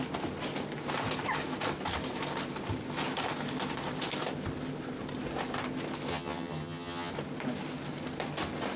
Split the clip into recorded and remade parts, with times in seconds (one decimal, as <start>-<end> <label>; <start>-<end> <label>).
0.0-6.1 recorded; 6.1-7.1 remade; 7.1-8.8 recorded